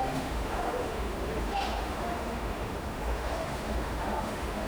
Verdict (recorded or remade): remade